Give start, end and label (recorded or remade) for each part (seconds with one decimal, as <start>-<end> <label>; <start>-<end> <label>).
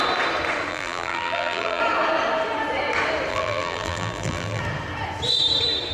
0.0-0.7 recorded; 0.7-1.8 remade; 1.8-3.3 recorded; 3.3-4.6 remade; 4.6-5.9 recorded